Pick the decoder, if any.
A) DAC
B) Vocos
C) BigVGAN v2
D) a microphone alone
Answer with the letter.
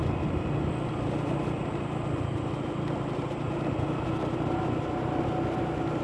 D